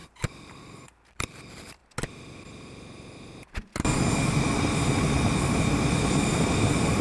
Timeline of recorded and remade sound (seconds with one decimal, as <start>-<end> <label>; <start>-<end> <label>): 0.0-1.8 remade; 1.8-5.5 recorded; 5.5-7.0 remade